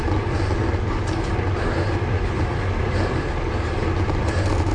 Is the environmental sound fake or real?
real